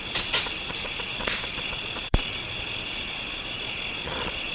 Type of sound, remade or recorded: remade